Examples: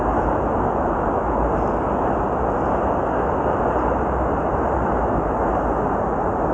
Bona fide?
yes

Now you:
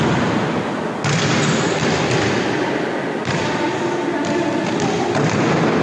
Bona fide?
yes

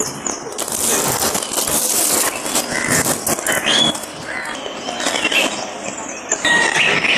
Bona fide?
yes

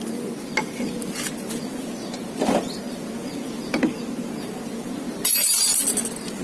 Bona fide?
yes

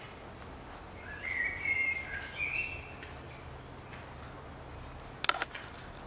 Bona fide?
yes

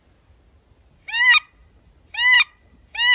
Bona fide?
yes